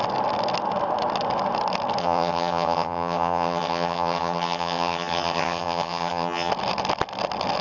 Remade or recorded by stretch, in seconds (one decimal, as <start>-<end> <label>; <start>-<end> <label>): 0.0-2.0 recorded; 2.0-6.5 remade; 6.5-7.6 recorded